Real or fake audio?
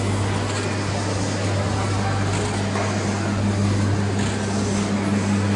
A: real